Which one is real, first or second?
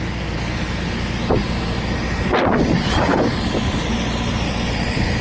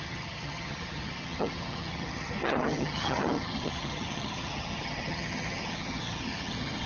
first